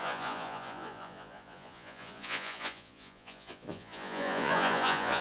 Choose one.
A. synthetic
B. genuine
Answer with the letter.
A